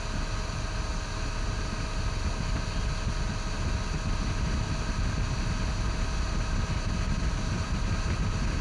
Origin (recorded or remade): recorded